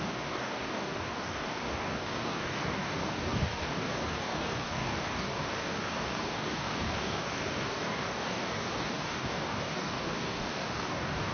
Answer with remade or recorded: remade